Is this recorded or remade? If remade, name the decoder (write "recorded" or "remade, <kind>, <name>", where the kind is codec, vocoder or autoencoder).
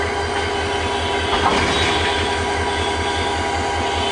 recorded